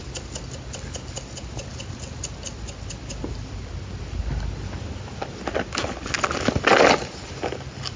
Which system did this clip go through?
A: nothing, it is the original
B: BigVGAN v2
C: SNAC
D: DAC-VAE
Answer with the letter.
A